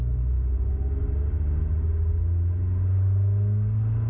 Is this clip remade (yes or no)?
no